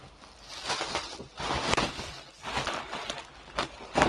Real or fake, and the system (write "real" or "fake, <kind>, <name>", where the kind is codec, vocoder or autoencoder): real